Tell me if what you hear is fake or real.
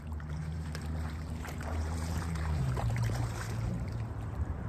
fake